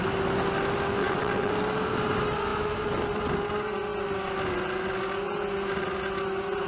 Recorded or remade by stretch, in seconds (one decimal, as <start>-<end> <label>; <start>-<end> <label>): 0.0-1.0 recorded; 1.0-1.5 remade; 1.5-6.7 recorded